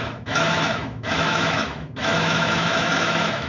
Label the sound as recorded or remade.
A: remade